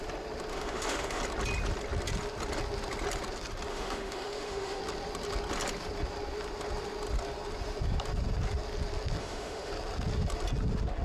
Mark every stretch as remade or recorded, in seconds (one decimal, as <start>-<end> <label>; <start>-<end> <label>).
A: 0.0-0.5 recorded; 0.5-1.2 remade; 1.2-3.7 recorded; 3.7-4.8 remade; 4.8-9.2 recorded; 9.2-9.7 remade; 9.7-11.0 recorded